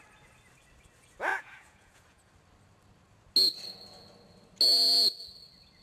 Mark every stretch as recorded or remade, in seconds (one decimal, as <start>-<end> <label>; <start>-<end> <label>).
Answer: 0.0-1.3 recorded; 1.3-2.3 remade; 2.3-5.8 recorded

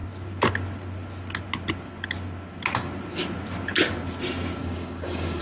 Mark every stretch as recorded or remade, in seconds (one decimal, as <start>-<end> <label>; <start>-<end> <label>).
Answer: 0.0-4.6 recorded; 4.6-5.4 remade

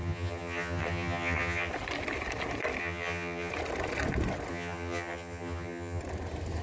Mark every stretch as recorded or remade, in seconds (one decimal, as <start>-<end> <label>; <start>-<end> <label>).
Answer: 0.0-1.7 remade; 1.7-2.8 recorded; 2.8-3.5 remade; 3.5-4.5 recorded; 4.5-6.0 remade; 6.0-6.6 recorded